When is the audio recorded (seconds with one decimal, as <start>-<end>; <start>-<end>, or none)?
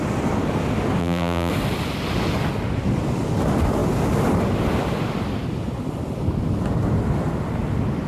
0.0-1.0; 1.5-8.1